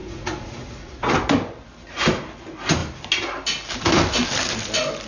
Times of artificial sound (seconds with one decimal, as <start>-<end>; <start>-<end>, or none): 0.0-1.1